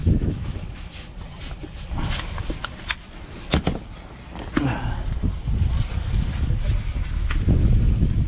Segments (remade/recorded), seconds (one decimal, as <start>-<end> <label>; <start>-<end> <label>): 0.0-1.1 remade; 1.1-8.3 recorded

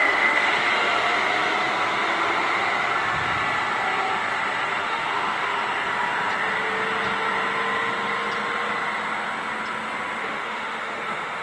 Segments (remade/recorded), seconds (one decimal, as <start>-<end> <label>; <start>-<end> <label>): 0.0-0.7 remade; 0.7-4.8 recorded; 4.8-5.5 remade; 5.5-10.2 recorded; 10.2-11.4 remade